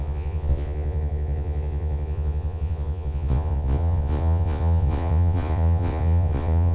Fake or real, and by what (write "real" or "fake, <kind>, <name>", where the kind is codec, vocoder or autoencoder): fake, vocoder, Vocos